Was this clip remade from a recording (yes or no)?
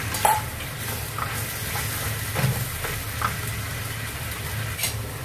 no